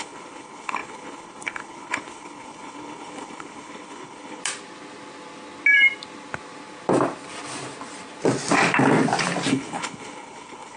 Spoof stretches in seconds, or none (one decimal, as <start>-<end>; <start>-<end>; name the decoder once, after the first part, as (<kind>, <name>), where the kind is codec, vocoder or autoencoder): 0.0-4.4 (codec, HILCodec); 9.5-10.8